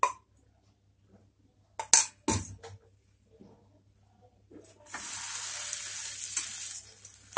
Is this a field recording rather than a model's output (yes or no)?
yes